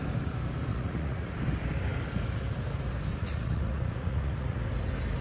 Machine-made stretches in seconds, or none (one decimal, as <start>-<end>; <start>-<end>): 0.7-1.3; 3.1-4.6